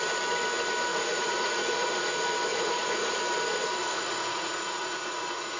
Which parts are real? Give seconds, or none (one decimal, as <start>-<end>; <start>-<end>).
0.0-0.9; 2.1-2.5; 3.2-3.8